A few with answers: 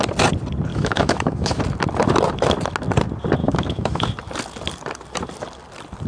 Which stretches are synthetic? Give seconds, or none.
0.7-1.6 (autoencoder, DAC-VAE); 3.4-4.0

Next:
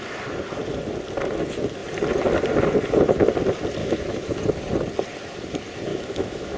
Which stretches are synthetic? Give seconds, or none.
3.8-4.4 (autoencoder, DAC-VAE); 5.9-6.6

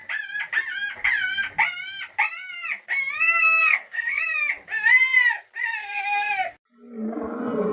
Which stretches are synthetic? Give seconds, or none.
3.6-4.2 (codec, SNAC); 5.8-6.3